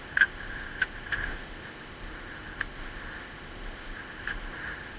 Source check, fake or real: fake